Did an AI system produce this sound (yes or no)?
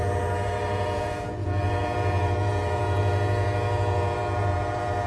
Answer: yes